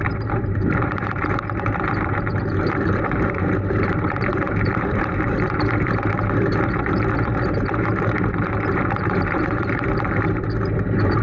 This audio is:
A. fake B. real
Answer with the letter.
A